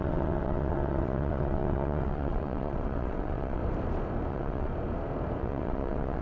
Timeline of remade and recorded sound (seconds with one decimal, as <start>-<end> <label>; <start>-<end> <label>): 0.0-3.6 remade; 3.6-4.3 recorded; 4.3-4.7 remade; 4.7-5.4 recorded; 5.4-6.2 remade